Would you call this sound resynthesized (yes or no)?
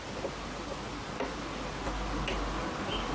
no